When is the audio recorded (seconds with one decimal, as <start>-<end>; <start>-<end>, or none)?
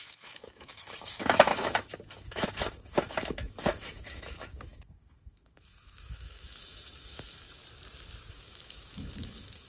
7.6-8.3